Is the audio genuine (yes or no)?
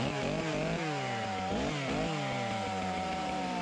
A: yes